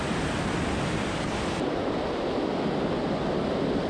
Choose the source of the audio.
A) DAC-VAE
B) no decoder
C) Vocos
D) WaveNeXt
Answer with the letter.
B